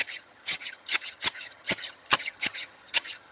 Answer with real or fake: fake